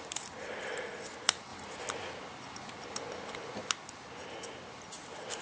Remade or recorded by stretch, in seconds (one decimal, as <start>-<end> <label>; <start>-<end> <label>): 0.0-5.4 recorded